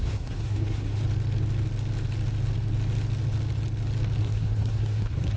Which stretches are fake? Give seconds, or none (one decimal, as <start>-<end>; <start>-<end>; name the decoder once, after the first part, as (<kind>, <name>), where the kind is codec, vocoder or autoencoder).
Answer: 0.0-1.0 (codec, SNAC); 4.2-5.4